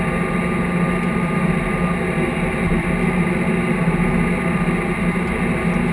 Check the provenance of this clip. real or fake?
real